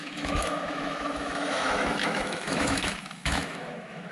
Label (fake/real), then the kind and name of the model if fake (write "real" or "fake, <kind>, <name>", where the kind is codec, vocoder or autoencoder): fake, autoencoder, DAC-VAE